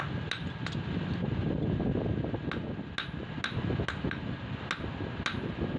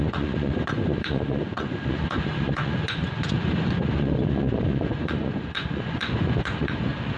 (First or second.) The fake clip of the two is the second